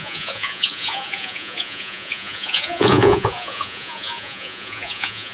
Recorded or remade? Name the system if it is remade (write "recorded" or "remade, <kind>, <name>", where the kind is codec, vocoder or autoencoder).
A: remade, vocoder, Vocos